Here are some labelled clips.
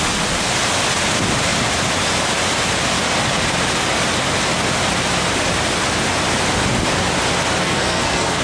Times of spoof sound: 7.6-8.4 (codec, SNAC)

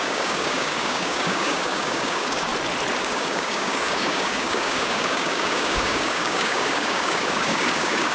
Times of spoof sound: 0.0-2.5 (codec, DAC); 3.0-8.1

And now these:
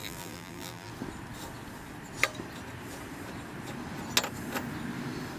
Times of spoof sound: 0.0-0.9 (vocoder, BigVGAN v2)

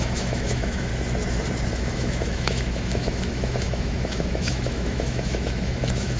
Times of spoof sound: 0.0-0.9 (autoencoder, DAC-VAE); 1.7-6.2

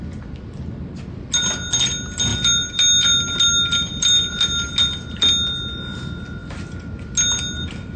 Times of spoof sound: none

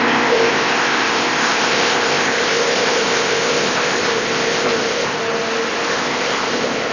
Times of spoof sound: 0.0-5.1 (codec, ZipCodec); 5.9-6.9

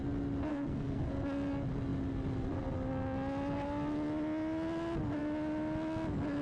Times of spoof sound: 0.5-1.1 (codec, SNAC)